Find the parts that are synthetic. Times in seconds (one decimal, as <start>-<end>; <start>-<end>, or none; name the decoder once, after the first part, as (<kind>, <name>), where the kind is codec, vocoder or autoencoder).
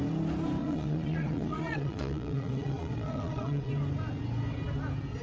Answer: 0.6-3.7 (vocoder, Vocos)